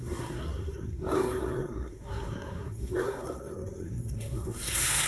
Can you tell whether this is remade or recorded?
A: remade